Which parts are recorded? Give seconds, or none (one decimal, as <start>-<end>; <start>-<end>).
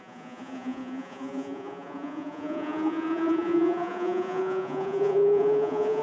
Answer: none